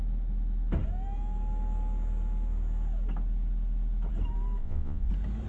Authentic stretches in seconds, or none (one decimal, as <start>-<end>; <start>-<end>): 0.0-4.6; 5.1-5.5